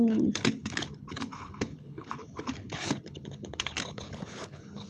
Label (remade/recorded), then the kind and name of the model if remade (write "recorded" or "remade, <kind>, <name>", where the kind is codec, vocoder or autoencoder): remade, codec, HILCodec